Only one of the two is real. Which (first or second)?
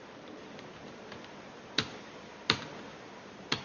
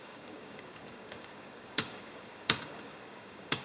first